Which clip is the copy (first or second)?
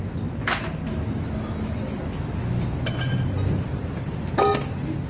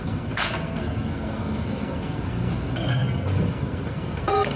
second